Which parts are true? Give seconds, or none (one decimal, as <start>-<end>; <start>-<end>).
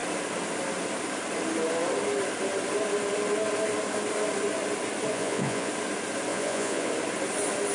0.0-5.1; 5.7-6.3; 6.9-7.7